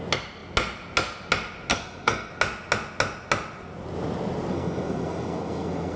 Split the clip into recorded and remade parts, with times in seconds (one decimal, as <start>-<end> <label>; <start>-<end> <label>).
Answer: 0.0-1.7 recorded; 1.7-2.3 remade; 2.3-4.5 recorded; 4.5-6.0 remade